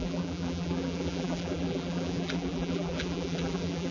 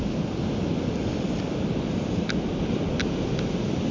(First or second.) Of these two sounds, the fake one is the first